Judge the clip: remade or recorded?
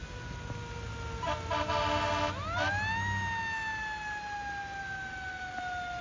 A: recorded